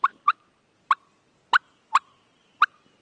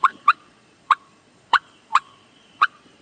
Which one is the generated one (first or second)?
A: second